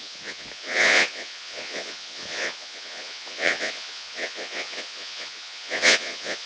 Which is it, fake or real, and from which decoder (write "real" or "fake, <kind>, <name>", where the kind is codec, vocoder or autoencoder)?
fake, vocoder, Vocos